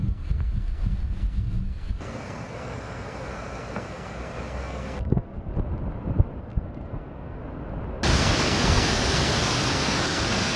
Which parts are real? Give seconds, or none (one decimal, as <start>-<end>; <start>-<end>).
5.5-6.4; 7.4-8.2